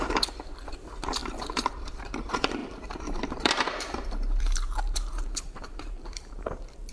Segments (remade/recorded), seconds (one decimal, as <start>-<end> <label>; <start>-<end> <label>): 0.0-6.9 remade